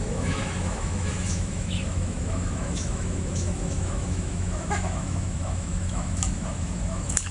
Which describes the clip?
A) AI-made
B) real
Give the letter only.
A